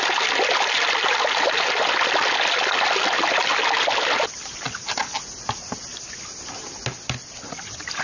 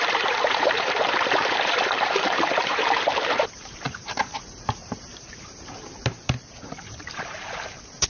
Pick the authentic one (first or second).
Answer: first